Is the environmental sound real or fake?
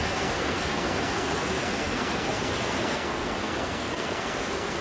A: fake